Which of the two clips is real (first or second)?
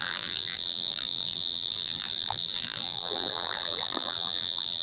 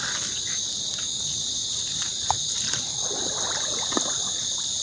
second